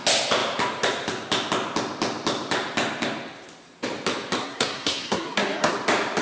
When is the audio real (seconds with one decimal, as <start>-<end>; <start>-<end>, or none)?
0.0-4.4; 5.7-6.2